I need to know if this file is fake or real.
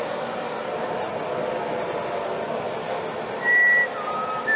real